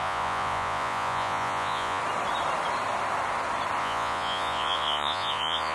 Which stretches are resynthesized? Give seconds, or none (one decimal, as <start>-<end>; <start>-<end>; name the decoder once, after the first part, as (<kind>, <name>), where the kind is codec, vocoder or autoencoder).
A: 0.0-2.0 (vocoder, Vocos); 3.8-5.7